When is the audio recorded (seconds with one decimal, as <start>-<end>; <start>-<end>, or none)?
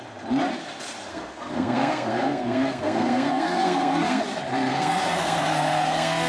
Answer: 0.0-1.1; 4.2-4.7